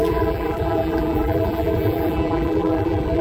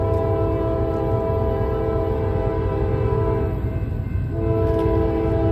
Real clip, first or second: second